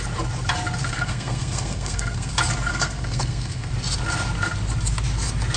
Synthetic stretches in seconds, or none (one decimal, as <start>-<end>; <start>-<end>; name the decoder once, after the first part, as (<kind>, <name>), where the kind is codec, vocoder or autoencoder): 0.8-2.3 (codec, SNAC); 2.7-3.7